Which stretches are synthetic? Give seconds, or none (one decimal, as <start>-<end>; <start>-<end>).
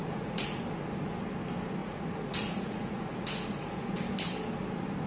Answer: 0.0-0.6; 1.8-3.9